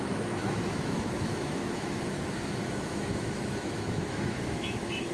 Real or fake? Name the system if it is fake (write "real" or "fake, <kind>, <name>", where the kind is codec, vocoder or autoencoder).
fake, autoencoder, DAC-VAE